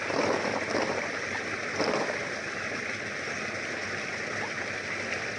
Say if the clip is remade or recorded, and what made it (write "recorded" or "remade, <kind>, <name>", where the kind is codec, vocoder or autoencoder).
recorded